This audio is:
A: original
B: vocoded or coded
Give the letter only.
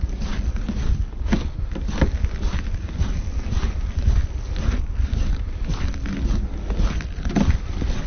A